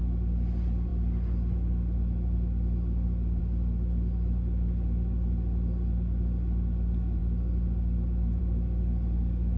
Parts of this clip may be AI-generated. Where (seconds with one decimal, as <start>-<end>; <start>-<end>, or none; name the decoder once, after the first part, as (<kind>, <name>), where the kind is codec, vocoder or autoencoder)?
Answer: none